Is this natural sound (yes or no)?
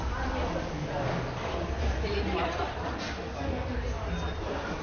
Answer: yes